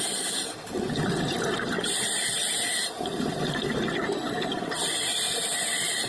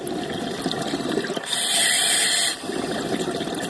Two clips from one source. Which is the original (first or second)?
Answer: first